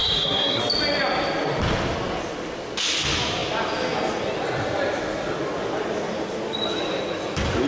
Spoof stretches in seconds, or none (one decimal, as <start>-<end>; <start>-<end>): 0.0-0.6